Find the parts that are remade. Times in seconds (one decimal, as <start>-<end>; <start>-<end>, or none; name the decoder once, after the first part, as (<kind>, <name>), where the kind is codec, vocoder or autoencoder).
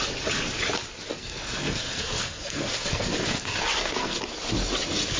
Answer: 1.1-4.2 (codec, SNAC)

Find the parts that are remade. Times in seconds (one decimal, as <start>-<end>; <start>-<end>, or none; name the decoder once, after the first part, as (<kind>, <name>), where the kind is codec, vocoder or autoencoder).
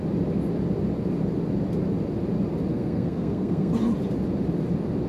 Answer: 2.7-3.7 (codec, SNAC)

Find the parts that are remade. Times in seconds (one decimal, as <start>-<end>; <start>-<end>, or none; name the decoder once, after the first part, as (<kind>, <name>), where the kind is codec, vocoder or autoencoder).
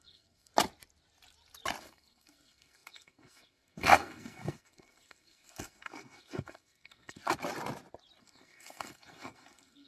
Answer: 0.0-0.5 (codec, SNAC); 1.8-7.2; 8.2-9.9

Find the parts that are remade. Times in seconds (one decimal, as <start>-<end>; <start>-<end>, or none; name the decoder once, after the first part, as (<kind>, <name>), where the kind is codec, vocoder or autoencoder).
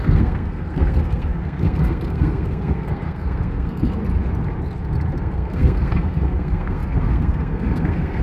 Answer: 0.0-4.0 (codec, SNAC); 5.2-8.2